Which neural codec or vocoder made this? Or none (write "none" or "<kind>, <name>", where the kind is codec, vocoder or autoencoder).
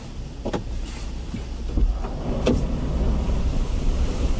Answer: none